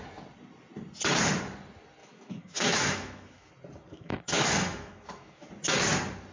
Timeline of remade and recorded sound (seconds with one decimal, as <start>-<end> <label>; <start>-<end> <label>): 0.0-2.0 recorded; 2.0-3.5 remade; 3.5-3.9 recorded; 3.9-5.5 remade; 5.5-6.3 recorded